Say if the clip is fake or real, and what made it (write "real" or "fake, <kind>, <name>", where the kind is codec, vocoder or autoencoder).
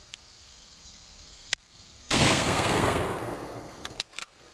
fake, codec, SNAC